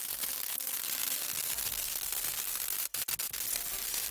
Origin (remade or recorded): recorded